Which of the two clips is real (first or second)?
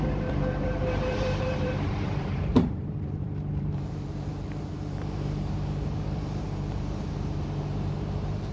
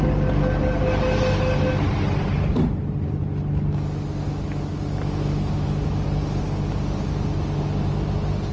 second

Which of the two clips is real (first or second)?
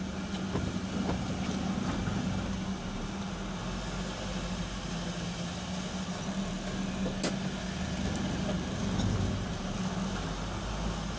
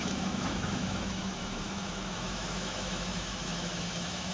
first